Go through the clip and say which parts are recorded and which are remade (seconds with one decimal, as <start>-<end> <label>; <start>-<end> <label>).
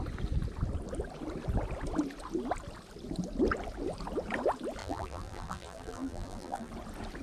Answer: 0.0-4.8 recorded; 4.8-6.7 remade; 6.7-7.2 recorded